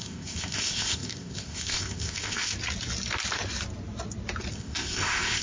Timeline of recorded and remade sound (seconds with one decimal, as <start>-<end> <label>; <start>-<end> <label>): 0.0-2.5 remade; 2.5-4.5 recorded; 4.5-5.4 remade